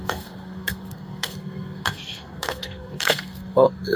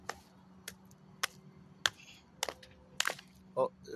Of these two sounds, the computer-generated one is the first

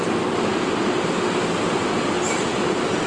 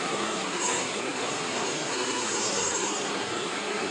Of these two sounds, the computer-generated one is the second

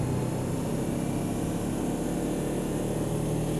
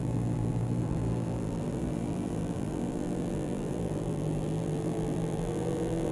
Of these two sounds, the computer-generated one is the second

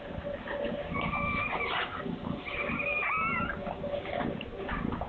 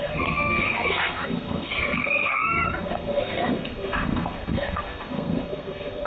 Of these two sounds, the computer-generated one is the second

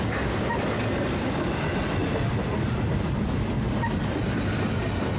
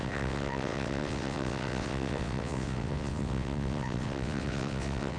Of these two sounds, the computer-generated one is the second